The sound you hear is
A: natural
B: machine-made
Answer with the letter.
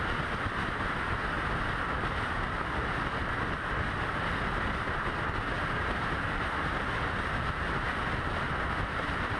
A